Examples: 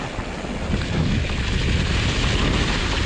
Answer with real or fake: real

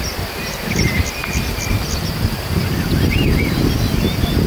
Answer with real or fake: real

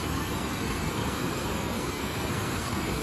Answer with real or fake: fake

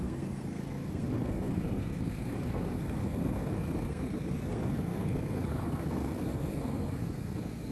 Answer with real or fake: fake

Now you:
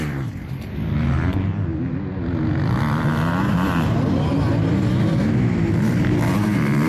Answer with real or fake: real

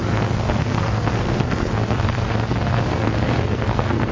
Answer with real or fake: fake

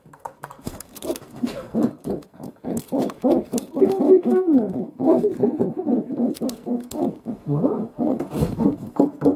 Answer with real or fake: fake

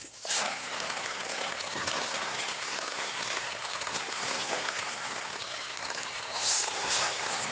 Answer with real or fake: fake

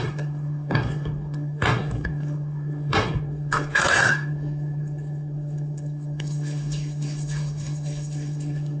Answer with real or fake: fake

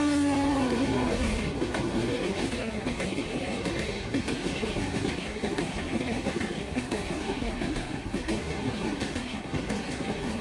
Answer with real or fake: fake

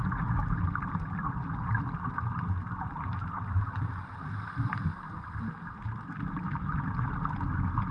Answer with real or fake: real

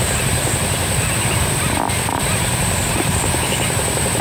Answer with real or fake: real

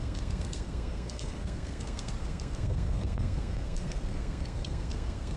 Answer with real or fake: fake